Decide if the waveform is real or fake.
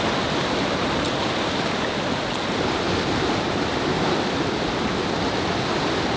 real